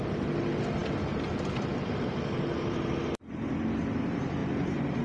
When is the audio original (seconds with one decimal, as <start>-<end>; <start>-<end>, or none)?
0.0-5.0